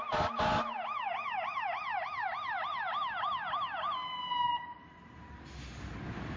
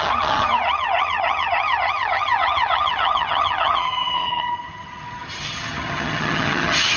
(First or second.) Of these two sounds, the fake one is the second